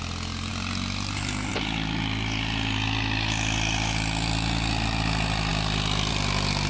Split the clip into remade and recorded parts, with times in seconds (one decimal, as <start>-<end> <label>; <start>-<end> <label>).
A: 0.0-6.7 recorded